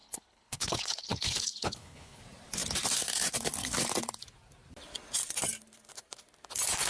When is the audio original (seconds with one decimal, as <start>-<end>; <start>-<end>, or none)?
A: 2.2-6.9